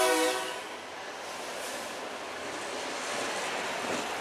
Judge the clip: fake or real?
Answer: real